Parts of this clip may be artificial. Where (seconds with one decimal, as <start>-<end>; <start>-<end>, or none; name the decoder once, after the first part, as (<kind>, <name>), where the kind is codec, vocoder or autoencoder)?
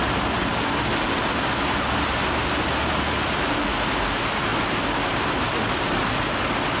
none